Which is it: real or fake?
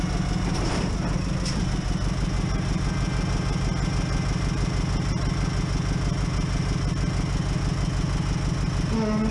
real